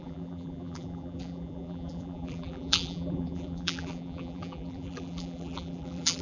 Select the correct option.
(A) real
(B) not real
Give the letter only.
B